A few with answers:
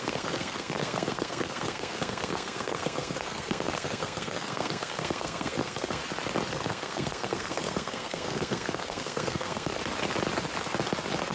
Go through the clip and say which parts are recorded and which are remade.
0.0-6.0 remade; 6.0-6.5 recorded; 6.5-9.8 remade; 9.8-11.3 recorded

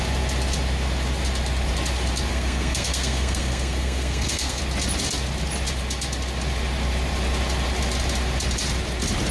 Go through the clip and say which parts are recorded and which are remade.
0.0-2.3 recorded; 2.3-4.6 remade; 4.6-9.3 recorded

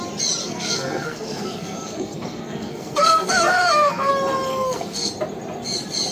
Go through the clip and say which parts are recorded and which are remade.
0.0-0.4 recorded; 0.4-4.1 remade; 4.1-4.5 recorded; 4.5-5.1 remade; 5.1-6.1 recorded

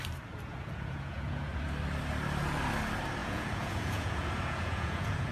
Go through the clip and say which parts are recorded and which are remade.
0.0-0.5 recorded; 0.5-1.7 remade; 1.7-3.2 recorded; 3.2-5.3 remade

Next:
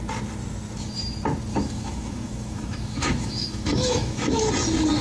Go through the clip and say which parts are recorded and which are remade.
0.0-1.5 recorded; 1.5-4.5 remade; 4.5-5.0 recorded